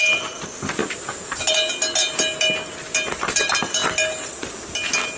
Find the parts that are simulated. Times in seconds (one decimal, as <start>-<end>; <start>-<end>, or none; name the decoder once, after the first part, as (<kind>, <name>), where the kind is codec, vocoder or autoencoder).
none